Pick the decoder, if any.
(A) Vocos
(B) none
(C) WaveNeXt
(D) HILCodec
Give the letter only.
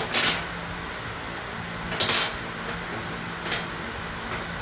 B